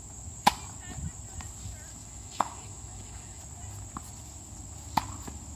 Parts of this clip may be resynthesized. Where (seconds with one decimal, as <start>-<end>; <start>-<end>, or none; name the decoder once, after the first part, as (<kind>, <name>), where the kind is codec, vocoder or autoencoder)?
2.0-3.4 (autoencoder, DAC-VAE)